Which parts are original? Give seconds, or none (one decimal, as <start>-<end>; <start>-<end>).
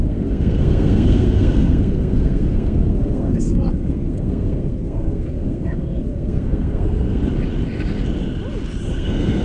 7.2-8.9